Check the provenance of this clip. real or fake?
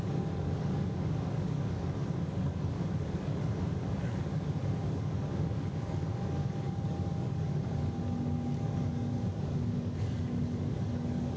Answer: fake